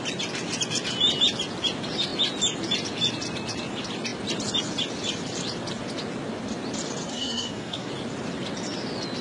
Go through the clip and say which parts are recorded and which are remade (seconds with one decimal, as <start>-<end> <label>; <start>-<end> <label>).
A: 0.0-7.1 recorded; 7.1-7.9 remade; 7.9-9.2 recorded